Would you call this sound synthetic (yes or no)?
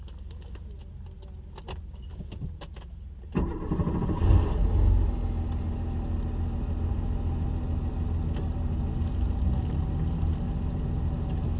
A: no